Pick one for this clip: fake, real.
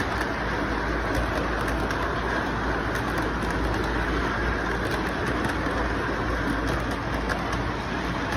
real